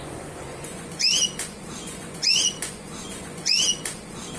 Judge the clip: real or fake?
fake